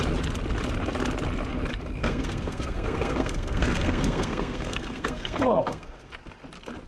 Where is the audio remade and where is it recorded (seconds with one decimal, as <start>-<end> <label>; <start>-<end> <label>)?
0.0-2.0 recorded; 2.0-6.1 remade; 6.1-6.9 recorded